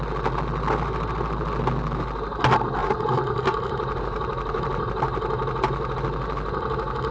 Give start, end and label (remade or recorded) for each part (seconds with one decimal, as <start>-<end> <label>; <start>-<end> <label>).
0.0-2.8 recorded; 2.8-5.9 remade; 5.9-7.1 recorded